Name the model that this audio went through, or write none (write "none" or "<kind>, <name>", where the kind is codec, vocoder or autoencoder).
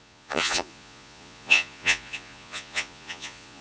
vocoder, Vocos